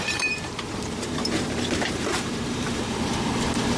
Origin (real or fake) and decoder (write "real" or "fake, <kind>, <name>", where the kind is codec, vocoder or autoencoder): fake, vocoder, BigVGAN v2